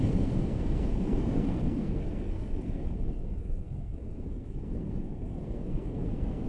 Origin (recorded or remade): remade